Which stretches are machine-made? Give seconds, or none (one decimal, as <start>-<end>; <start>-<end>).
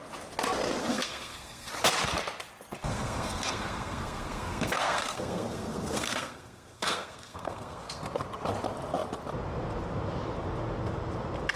0.8-1.7; 2.8-8.0